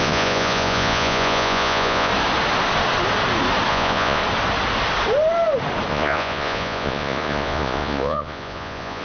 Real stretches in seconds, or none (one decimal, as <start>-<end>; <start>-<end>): 2.1-3.7; 4.2-5.9